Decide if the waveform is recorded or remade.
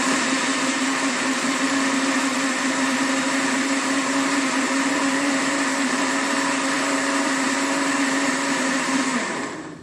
remade